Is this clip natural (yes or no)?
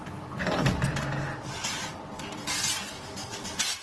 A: yes